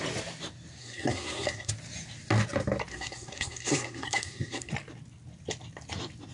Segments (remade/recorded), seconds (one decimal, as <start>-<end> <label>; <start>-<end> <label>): 0.0-0.8 recorded; 0.8-1.7 remade; 1.7-2.9 recorded; 2.9-4.7 remade; 4.7-6.3 recorded